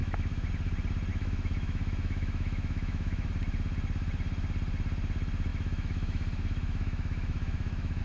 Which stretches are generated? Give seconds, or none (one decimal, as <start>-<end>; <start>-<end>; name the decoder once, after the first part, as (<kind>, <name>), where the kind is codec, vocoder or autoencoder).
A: 0.0-0.5 (autoencoder, DAC-VAE); 1.1-3.3; 5.5-8.0